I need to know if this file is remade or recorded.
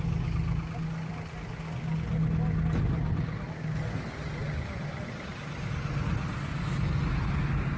recorded